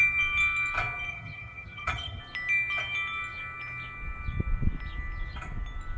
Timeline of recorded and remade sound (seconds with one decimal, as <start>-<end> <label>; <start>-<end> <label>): 0.0-1.1 recorded; 1.1-2.2 remade; 2.2-6.0 recorded